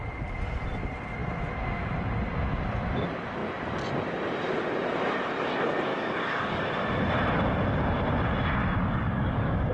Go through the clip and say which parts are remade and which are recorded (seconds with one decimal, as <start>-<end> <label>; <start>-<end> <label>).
0.0-5.9 recorded; 5.9-6.6 remade; 6.6-8.8 recorded; 8.8-9.7 remade